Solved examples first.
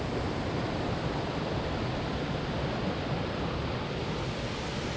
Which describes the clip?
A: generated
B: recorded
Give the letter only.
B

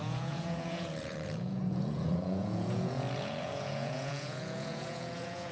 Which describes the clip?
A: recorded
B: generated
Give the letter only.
B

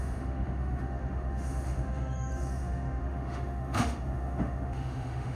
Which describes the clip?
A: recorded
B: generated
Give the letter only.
B